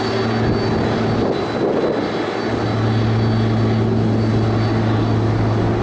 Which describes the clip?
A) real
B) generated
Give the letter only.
A